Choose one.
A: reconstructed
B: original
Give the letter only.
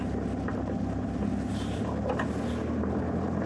B